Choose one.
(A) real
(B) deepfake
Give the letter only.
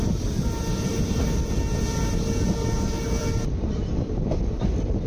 A